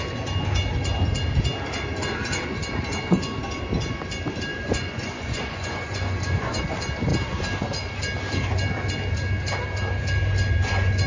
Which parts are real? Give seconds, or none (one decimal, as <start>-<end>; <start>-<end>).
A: 0.0-4.5; 6.6-11.1